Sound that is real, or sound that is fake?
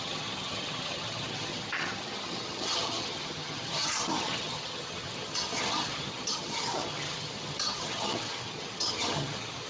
fake